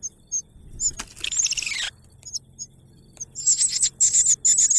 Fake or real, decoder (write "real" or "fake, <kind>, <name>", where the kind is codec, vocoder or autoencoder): real